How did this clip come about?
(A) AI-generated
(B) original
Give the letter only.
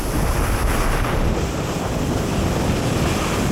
B